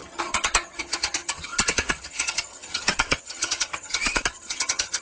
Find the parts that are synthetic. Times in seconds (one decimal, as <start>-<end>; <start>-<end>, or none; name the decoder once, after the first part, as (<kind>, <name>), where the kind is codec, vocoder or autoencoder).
0.0-5.0 (vocoder, HiFi-GAN)